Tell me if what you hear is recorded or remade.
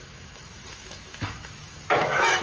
remade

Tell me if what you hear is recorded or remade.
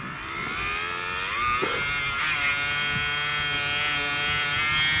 recorded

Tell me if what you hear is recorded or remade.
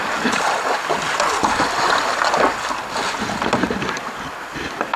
recorded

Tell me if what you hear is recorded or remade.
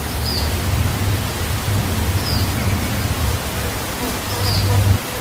recorded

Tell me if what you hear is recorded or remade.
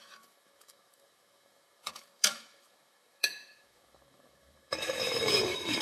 remade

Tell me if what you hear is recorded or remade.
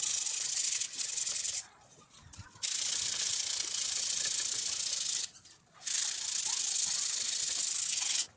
recorded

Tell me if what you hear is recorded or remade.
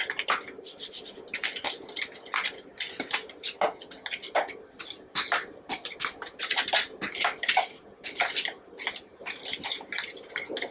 recorded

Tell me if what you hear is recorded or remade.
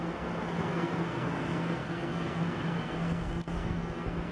remade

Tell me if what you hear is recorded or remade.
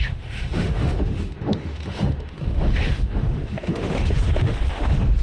remade